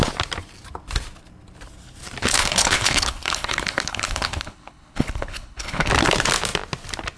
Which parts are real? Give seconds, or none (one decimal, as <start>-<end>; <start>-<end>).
0.0-2.3; 5.9-7.2